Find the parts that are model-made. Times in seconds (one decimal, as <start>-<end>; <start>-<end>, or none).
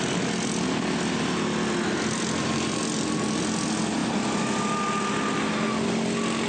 none